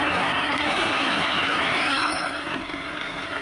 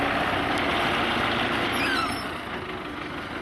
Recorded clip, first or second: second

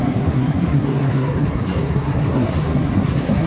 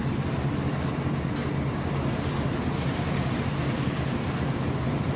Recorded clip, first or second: second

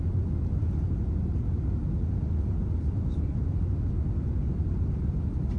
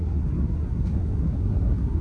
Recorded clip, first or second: first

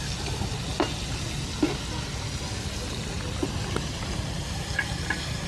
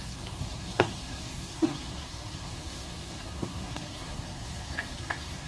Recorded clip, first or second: first